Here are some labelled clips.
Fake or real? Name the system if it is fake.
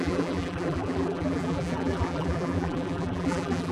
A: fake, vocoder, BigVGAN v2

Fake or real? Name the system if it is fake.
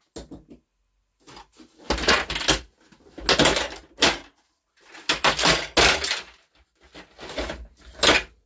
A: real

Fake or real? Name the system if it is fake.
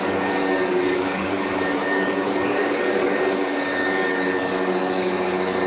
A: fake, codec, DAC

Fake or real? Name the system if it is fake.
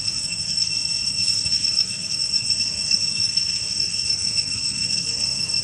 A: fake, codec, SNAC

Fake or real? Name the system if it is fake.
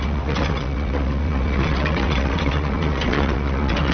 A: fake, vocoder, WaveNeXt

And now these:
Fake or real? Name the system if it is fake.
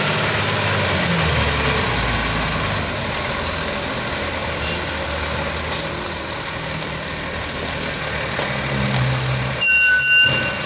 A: real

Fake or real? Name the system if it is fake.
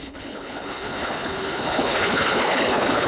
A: fake, codec, HILCodec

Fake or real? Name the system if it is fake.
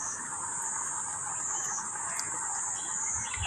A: real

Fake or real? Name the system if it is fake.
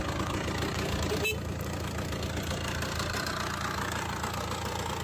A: real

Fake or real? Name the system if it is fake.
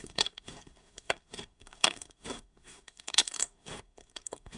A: fake, codec, SNAC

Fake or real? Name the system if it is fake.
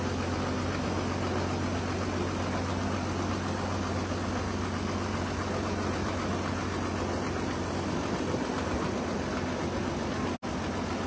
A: real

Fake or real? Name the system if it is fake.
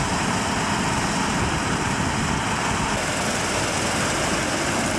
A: real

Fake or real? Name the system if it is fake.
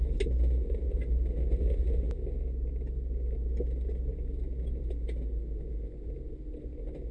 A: real